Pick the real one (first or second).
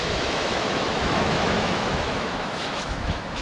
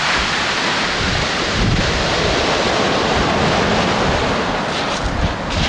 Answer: second